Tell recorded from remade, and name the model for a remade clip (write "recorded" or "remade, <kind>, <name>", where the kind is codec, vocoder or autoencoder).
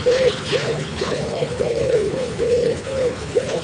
remade, codec, HILCodec